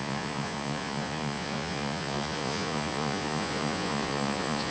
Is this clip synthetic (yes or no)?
yes